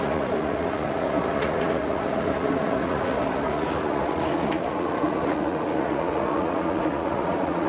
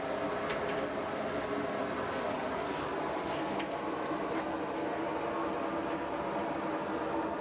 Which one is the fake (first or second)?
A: first